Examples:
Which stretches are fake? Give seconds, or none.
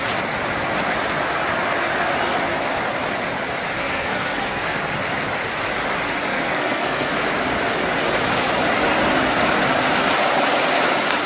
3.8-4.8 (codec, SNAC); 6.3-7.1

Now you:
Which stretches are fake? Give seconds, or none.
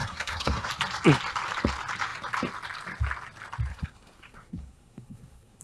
0.0-0.7 (codec, SNAC); 3.7-5.6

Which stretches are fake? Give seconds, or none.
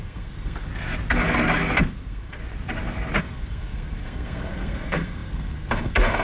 0.0-0.7 (codec, SNAC); 1.8-2.4; 3.2-6.2